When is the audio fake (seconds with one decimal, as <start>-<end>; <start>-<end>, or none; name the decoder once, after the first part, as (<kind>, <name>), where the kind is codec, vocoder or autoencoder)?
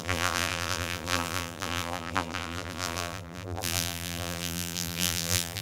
0.0-5.6 (vocoder, BigVGAN v2)